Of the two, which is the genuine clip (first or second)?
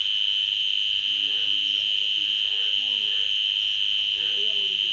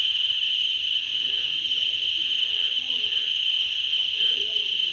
first